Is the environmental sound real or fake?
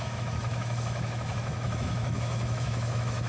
fake